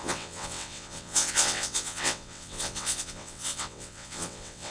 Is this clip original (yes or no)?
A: no